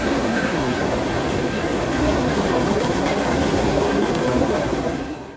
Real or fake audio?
fake